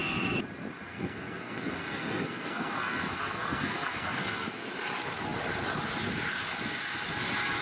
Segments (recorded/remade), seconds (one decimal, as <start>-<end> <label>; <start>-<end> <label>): 0.0-0.9 recorded; 0.9-4.7 remade; 4.7-7.6 recorded